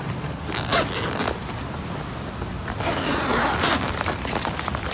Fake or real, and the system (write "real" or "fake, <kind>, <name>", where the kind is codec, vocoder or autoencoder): real